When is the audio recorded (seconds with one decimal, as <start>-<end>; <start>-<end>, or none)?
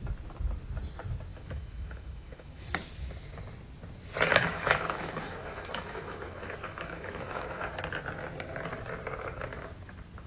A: 0.0-1.3; 2.7-4.3; 7.8-10.3